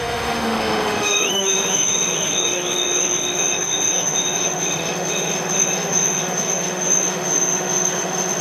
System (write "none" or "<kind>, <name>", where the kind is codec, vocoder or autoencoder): autoencoder, DAC-VAE